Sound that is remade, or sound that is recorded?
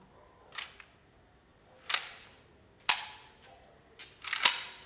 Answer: recorded